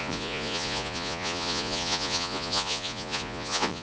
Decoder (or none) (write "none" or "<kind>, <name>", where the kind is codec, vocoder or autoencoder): vocoder, Vocos